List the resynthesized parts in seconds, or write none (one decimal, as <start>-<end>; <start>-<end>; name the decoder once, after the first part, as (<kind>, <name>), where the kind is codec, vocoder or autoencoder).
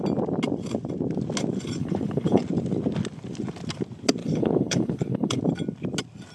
1.8-2.4 (codec, HILCodec); 4.2-5.4